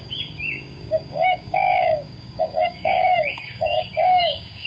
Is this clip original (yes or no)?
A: no